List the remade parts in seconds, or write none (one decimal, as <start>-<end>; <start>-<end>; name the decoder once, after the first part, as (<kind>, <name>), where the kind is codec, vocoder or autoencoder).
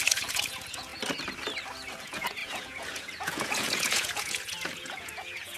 0.0-0.9 (vocoder, Vocos); 2.0-5.6